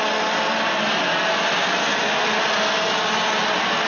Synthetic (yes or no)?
no